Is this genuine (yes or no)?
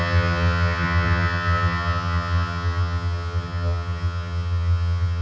no